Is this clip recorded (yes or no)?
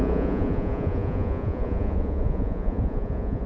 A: no